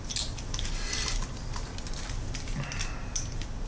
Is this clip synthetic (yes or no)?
no